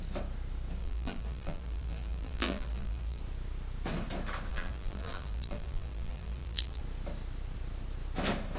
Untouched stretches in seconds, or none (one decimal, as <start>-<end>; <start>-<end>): 0.0-0.8; 3.2-4.5; 6.8-8.6